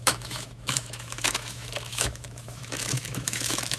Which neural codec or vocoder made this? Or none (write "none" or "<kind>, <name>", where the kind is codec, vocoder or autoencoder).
autoencoder, DAC-VAE